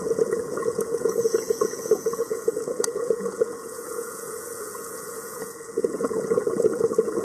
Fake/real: fake